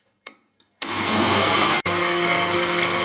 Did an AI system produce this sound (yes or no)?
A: yes